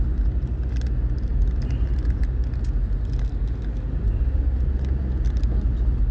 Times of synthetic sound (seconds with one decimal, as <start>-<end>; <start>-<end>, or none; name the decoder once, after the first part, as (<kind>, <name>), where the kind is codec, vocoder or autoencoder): none